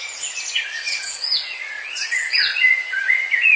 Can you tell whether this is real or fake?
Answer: fake